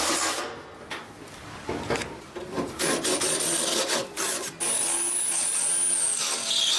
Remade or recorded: recorded